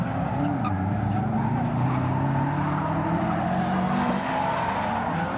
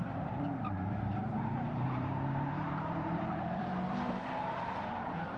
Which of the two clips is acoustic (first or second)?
first